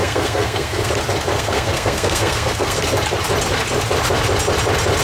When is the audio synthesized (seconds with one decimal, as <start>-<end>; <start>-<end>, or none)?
0.0-0.9; 1.3-2.8